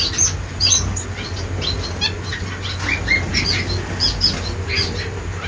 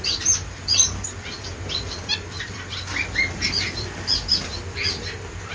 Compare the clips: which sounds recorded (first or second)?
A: first